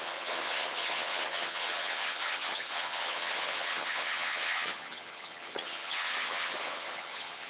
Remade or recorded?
remade